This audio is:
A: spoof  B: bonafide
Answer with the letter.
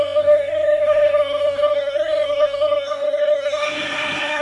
A